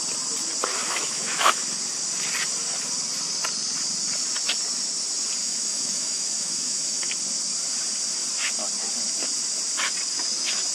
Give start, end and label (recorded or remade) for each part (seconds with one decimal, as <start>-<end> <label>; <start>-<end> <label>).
0.0-0.8 recorded; 0.8-1.6 remade; 1.6-5.4 recorded; 5.4-7.1 remade; 7.1-10.7 recorded